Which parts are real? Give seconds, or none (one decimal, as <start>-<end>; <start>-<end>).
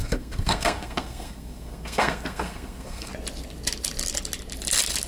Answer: 3.1-5.1